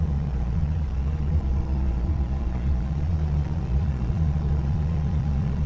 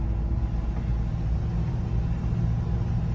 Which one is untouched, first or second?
second